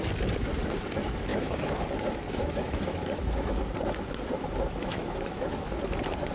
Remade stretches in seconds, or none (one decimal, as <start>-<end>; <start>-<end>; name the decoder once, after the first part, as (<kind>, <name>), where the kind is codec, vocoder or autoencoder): 1.3-1.8 (autoencoder, DAC-VAE); 2.4-3.6; 4.8-5.7